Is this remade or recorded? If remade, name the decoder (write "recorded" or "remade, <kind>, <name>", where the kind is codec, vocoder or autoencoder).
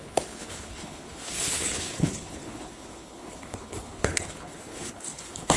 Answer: remade, codec, HILCodec